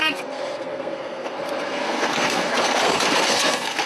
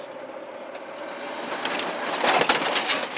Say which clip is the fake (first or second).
first